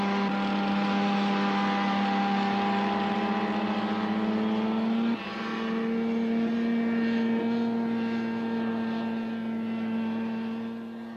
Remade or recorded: recorded